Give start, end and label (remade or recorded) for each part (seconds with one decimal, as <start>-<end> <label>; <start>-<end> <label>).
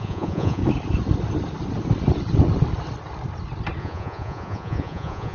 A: 0.0-0.6 remade; 0.6-3.8 recorded; 3.8-5.3 remade